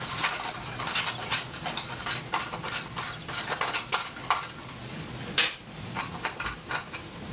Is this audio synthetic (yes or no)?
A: no